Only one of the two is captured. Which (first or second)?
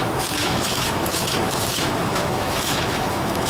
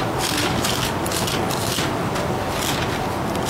second